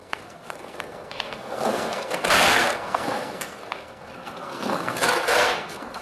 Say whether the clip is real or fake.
fake